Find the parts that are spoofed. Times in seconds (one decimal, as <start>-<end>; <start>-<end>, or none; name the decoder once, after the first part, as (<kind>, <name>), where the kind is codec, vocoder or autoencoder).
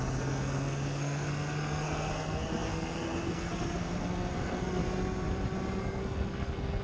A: 0.0-4.8 (codec, SNAC); 5.8-6.8